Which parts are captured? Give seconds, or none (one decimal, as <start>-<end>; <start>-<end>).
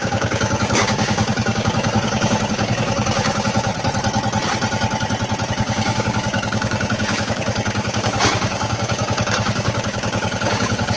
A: 3.7-5.5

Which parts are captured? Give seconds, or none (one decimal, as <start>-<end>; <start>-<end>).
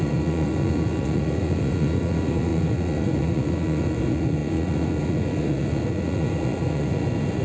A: none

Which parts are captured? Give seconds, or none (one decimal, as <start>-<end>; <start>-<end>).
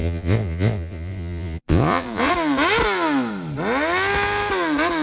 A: 2.3-5.0